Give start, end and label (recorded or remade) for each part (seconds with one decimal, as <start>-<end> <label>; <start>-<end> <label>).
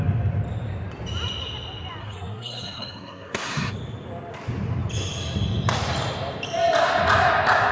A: 0.0-2.0 recorded; 2.0-3.7 remade; 3.7-7.7 recorded